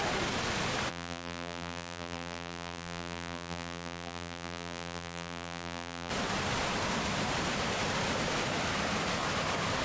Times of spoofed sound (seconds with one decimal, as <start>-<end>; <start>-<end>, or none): 0.9-6.1